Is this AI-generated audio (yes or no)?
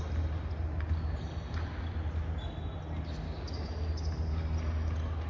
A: no